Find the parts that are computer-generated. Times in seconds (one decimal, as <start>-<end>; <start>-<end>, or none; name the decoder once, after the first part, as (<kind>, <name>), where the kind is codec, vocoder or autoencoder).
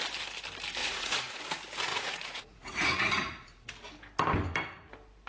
0.8-1.4 (vocoder, Vocos); 1.9-3.7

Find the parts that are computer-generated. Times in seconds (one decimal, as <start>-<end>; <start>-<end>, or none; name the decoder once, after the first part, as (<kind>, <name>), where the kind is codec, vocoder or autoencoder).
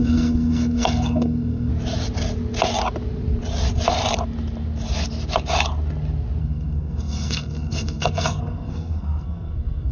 0.0-1.7 (codec, SNAC); 6.4-9.9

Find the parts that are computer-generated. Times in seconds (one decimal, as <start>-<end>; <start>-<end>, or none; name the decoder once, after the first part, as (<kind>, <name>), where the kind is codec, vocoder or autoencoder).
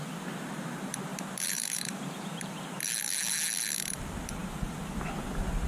1.1-2.7 (vocoder, BigVGAN v2)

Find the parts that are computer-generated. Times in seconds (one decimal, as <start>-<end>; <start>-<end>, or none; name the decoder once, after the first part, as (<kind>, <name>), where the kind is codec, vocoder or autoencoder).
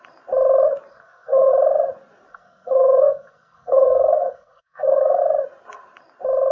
0.9-1.5 (codec, SNAC); 2.3-5.2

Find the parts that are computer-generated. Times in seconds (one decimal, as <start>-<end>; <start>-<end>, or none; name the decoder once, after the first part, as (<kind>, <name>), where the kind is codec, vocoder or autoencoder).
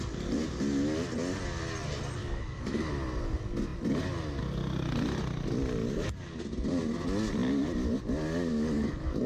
2.2-2.9 (codec, DAC); 8.5-9.3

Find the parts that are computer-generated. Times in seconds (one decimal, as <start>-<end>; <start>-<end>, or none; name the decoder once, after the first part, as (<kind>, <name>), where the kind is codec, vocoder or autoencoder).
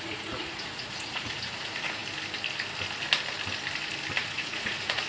0.0-2.0 (vocoder, Vocos); 4.2-5.1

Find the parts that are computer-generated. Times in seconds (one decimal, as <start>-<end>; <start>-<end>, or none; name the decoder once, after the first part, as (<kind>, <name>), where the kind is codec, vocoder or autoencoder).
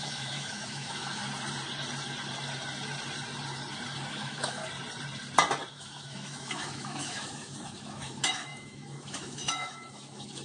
0.0-1.2 (autoencoder, DAC-VAE); 4.1-4.6; 5.7-10.4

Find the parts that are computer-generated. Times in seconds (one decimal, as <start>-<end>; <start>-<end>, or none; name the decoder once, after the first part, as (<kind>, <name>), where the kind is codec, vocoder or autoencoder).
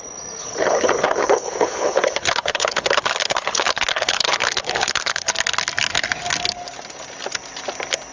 0.4-5.3 (codec, HILCodec)